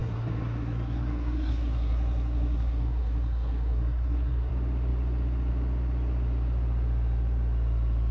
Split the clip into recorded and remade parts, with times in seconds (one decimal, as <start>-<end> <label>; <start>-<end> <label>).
0.0-4.5 remade; 4.5-8.1 recorded